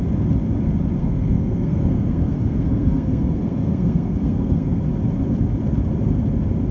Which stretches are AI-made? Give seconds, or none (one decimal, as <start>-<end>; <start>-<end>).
1.0-4.8